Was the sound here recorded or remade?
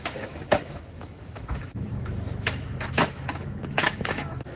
remade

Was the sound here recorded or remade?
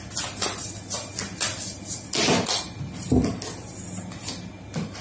recorded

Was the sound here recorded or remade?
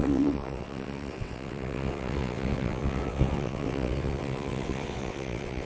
remade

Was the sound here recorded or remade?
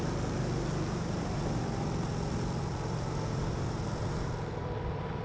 recorded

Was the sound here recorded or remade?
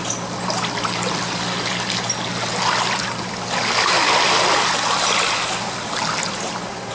recorded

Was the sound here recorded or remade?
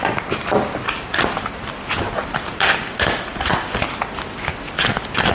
recorded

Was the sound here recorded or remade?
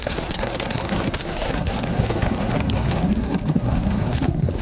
remade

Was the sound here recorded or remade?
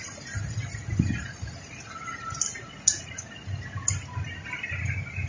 recorded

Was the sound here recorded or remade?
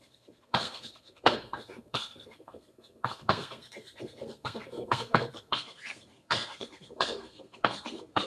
remade